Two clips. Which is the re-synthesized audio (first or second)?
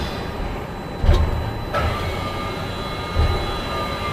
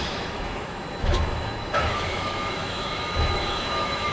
second